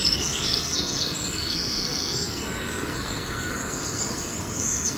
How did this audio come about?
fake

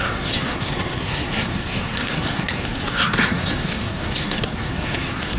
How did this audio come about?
fake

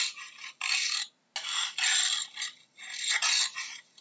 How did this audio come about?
real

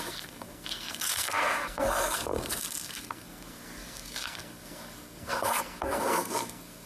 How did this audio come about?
fake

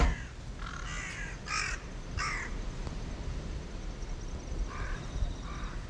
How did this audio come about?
real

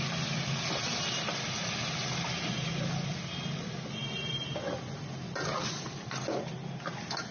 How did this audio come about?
real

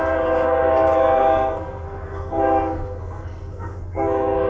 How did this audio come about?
fake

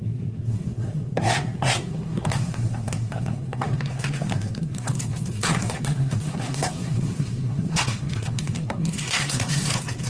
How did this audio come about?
fake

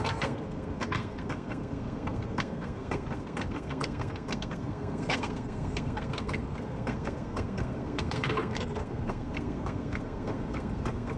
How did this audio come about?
fake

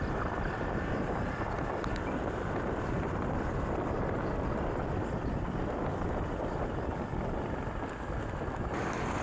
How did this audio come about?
real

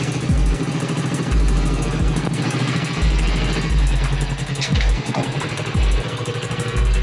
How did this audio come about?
fake